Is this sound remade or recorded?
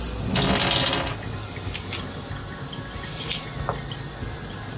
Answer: recorded